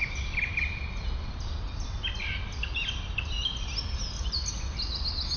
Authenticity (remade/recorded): recorded